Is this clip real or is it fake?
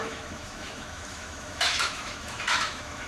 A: fake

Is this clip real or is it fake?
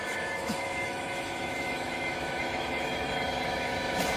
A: fake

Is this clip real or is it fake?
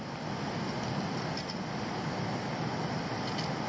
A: real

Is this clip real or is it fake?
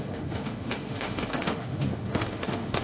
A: fake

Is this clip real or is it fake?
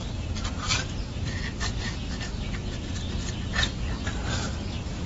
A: real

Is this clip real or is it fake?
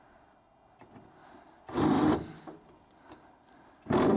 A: real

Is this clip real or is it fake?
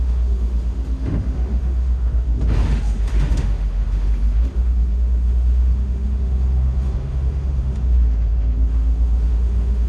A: fake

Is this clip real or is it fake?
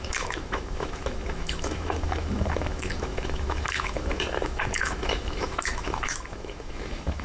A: fake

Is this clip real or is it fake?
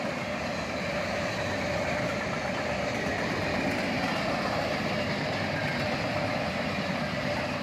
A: real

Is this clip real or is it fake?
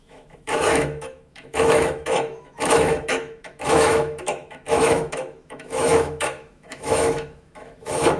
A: fake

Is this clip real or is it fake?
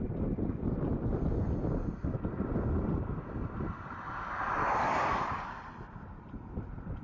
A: real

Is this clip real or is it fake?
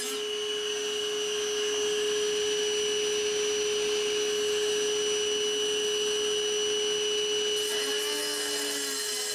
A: real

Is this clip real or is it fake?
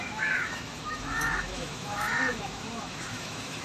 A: fake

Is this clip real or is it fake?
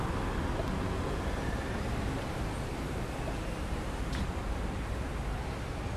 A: real